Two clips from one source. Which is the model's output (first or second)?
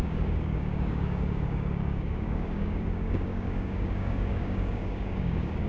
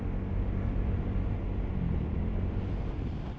first